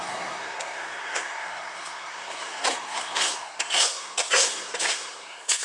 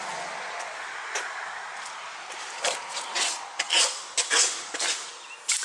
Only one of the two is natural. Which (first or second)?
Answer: second